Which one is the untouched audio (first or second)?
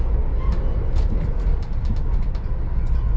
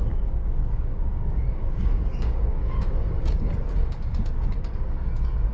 first